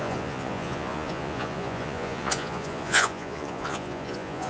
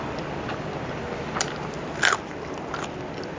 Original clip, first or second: second